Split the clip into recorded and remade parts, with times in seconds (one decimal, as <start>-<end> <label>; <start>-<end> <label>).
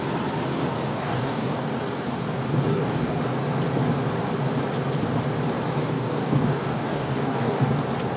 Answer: 0.0-0.9 recorded; 0.9-1.7 remade; 1.7-2.7 recorded; 2.7-3.2 remade; 3.2-5.8 recorded; 5.8-7.7 remade; 7.7-8.2 recorded